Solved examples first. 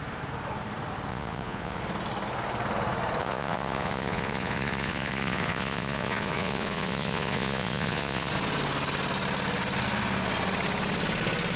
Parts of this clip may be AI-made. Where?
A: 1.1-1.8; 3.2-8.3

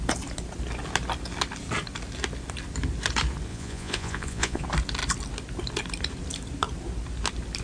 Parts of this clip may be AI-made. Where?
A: 3.5-4.6

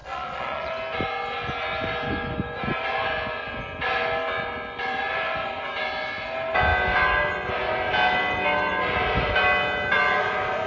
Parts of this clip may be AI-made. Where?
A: 0.0-0.7

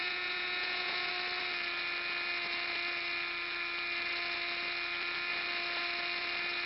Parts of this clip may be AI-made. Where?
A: 0.0-1.1

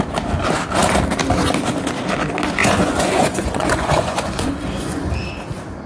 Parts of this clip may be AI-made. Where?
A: 2.6-5.1

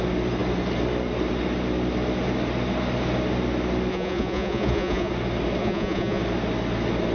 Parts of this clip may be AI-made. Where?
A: 3.9-5.1; 5.6-6.2